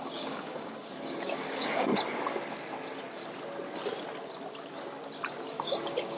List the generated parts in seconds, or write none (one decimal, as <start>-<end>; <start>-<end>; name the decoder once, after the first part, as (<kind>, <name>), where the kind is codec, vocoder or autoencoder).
0.0-1.9 (codec, DAC); 5.6-6.2